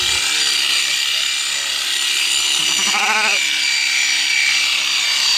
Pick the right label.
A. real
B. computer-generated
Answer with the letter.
A